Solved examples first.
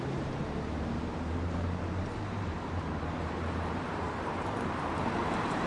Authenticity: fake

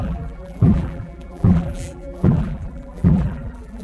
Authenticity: fake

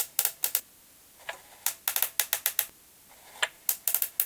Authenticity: real